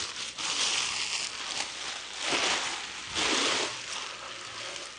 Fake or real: real